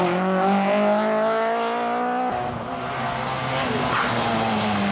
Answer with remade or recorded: recorded